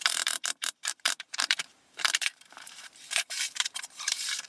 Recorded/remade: remade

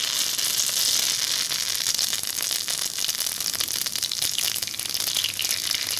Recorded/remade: recorded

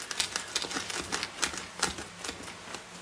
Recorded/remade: recorded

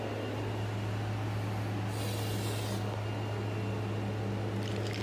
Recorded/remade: recorded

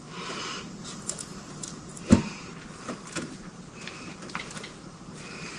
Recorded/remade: remade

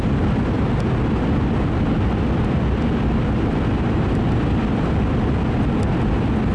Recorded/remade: recorded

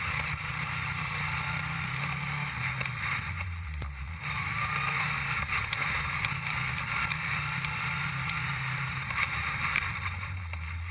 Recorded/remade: remade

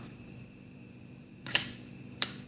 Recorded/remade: remade